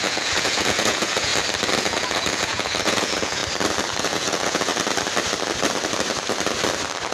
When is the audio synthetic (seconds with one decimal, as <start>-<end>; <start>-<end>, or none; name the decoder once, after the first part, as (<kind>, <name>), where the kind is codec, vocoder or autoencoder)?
0.0-1.3 (vocoder, Vocos); 1.8-3.4; 4.0-4.7